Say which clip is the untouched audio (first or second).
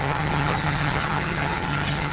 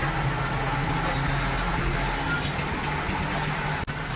second